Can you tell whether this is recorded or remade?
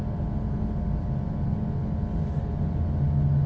recorded